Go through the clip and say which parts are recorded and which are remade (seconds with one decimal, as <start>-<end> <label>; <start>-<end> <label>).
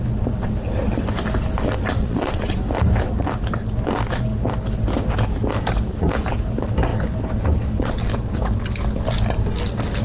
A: 0.0-2.0 recorded; 2.0-2.6 remade; 2.6-10.0 recorded